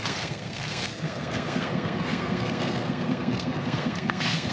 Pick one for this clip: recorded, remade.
remade